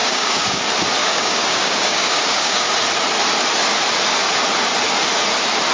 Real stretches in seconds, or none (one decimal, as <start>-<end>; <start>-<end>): 0.6-1.0; 2.7-5.7